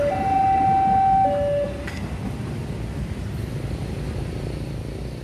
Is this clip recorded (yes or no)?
yes